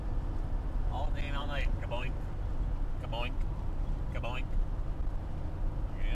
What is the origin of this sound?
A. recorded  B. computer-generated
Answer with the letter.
A